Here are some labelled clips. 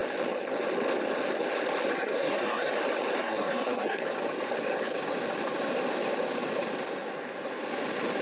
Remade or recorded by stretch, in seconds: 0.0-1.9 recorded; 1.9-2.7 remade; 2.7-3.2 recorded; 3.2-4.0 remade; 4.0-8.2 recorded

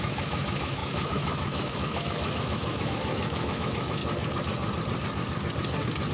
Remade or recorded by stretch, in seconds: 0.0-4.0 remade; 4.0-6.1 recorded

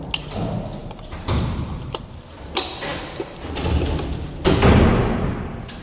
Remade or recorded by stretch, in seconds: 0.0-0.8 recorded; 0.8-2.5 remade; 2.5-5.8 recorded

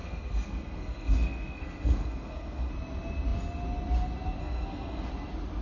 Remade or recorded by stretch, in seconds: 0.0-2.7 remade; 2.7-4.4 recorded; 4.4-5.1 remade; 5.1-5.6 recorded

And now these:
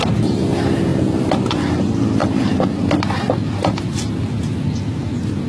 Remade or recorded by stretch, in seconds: 0.0-5.5 recorded

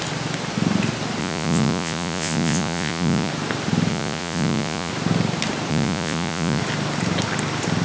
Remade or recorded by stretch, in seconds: 0.0-1.2 recorded; 1.2-3.3 remade; 3.3-3.9 recorded; 3.9-4.9 remade; 4.9-5.7 recorded; 5.7-6.6 remade; 6.6-7.8 recorded

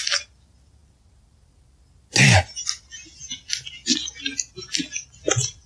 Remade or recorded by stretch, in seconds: 0.0-5.7 recorded